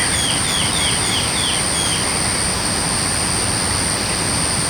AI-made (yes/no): no